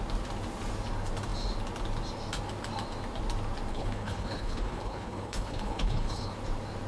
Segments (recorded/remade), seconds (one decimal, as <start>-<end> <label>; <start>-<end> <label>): 0.0-3.7 recorded; 3.7-6.3 remade; 6.3-6.9 recorded